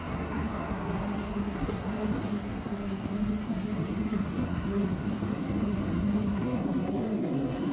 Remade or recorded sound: remade